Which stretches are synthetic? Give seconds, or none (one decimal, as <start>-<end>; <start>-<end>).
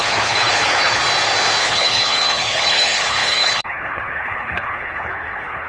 0.0-1.0; 1.6-5.7